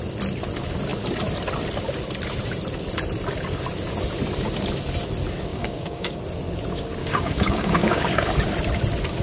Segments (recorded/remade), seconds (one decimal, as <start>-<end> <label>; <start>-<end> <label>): 0.0-5.5 recorded; 5.5-6.2 remade; 6.2-7.0 recorded; 7.0-8.4 remade; 8.4-9.2 recorded